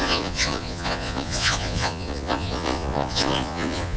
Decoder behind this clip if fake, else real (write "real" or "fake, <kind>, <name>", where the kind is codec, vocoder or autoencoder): fake, vocoder, Vocos